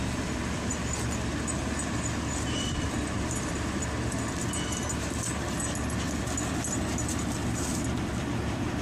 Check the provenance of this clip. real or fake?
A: real